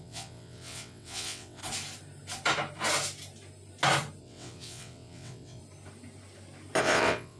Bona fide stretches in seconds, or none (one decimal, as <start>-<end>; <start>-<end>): 1.6-4.2; 5.6-6.8